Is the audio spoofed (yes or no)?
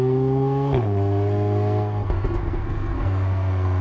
yes